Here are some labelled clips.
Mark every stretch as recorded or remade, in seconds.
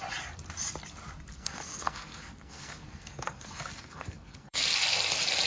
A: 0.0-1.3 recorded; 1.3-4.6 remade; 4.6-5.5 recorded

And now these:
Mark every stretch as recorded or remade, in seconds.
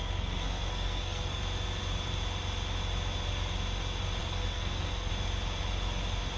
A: 0.0-1.4 remade; 1.4-4.2 recorded; 4.2-5.1 remade; 5.1-6.4 recorded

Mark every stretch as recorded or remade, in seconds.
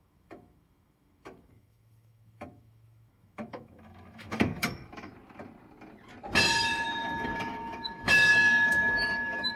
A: 0.0-5.1 remade; 5.1-6.4 recorded; 6.4-9.6 remade